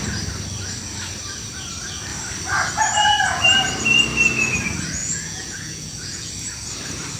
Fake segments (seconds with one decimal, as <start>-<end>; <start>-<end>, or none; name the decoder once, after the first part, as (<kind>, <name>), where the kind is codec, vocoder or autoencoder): 5.0-6.3 (vocoder, Vocos)